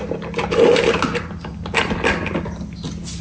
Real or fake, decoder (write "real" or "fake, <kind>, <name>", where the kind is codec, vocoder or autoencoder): real